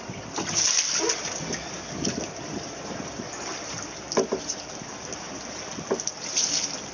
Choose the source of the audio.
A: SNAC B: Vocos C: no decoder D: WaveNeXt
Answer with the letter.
C